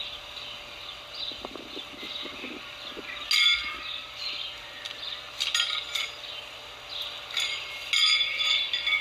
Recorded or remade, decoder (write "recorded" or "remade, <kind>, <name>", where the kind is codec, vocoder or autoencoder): recorded